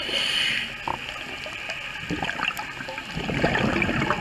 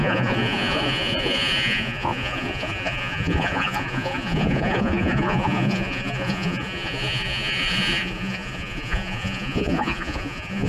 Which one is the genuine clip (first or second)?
first